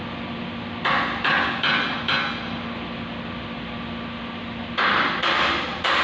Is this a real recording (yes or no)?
yes